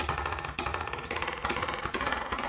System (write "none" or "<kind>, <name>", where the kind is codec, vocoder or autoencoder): vocoder, Vocos